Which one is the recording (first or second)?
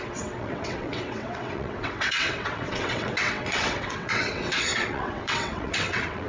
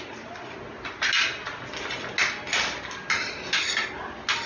second